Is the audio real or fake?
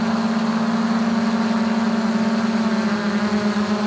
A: real